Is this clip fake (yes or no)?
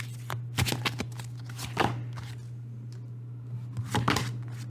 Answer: no